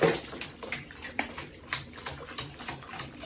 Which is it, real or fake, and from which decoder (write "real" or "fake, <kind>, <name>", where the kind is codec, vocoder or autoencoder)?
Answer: fake, vocoder, BigVGAN v2